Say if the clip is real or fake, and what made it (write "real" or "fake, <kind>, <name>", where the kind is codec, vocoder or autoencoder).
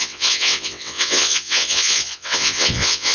fake, vocoder, WaveNeXt